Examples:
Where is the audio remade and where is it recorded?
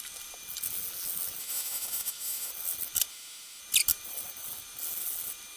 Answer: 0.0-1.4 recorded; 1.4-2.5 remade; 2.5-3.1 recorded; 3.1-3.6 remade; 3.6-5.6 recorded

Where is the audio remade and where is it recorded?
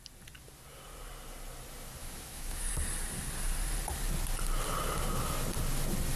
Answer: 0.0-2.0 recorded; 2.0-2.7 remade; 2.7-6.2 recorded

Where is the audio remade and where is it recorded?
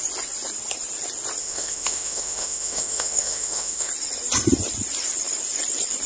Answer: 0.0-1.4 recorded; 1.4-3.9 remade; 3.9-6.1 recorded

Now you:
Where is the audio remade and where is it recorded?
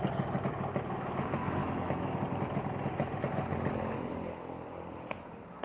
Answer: 0.0-1.6 recorded; 1.6-2.2 remade; 2.2-5.6 recorded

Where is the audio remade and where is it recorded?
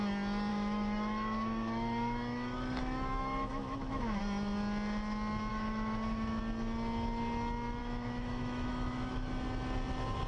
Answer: 0.0-0.5 recorded; 0.5-4.2 remade; 4.2-5.5 recorded; 5.5-6.4 remade; 6.4-7.8 recorded; 7.8-9.3 remade; 9.3-10.3 recorded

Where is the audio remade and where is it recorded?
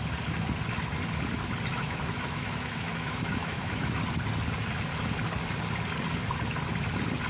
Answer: 0.0-1.7 recorded; 1.7-4.0 remade; 4.0-7.3 recorded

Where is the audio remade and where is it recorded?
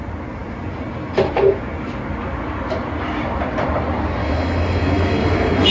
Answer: 0.0-4.2 recorded; 4.2-5.7 remade